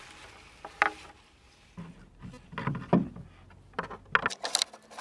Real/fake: real